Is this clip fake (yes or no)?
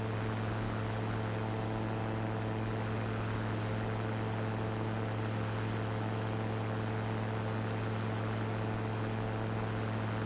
no